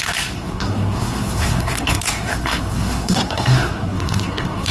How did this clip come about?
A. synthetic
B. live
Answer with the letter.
A